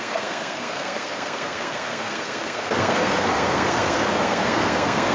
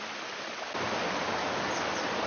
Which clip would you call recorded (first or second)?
second